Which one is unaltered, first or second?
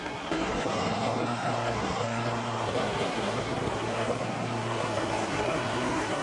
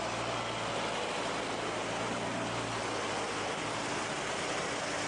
second